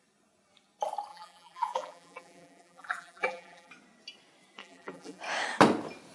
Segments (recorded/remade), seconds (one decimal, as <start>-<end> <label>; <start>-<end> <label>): 0.0-1.1 recorded; 1.1-3.7 remade; 3.7-4.6 recorded; 4.6-5.2 remade; 5.2-6.1 recorded